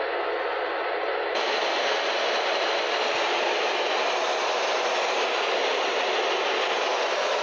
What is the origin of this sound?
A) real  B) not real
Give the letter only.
A